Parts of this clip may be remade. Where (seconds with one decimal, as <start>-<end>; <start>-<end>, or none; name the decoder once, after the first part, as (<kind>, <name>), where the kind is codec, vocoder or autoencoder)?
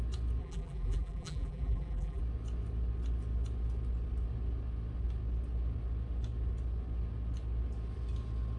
0.4-2.2 (vocoder, BigVGAN v2)